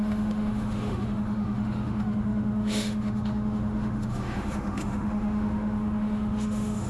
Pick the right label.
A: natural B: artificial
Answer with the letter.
B